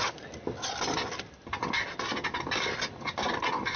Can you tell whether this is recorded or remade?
recorded